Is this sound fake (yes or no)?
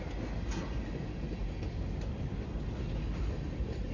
no